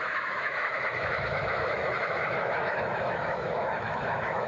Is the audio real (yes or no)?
no